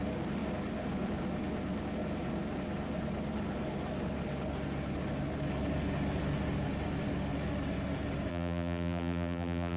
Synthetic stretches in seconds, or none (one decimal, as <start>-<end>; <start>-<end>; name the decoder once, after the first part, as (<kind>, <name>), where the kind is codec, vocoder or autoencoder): 8.3-9.8 (vocoder, BigVGAN v2)